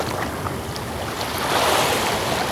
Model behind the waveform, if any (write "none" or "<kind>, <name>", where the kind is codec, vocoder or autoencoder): none